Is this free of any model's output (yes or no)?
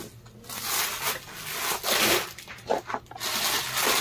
yes